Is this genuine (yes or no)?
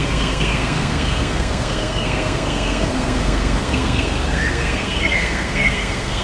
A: no